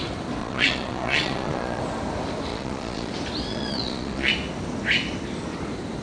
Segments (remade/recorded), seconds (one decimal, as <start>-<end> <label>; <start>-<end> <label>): 0.0-0.4 recorded; 0.4-1.8 remade; 1.8-2.5 recorded; 2.5-3.1 remade; 3.1-3.5 recorded; 3.5-4.3 remade; 4.3-6.0 recorded